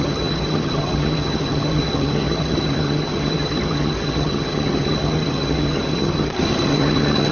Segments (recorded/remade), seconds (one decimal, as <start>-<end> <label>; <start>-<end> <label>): 0.0-7.3 remade